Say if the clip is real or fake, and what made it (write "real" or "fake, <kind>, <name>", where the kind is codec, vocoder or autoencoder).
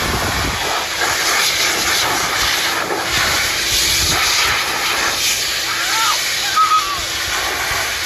real